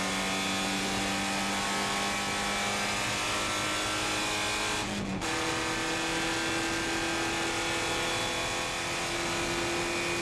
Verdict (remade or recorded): recorded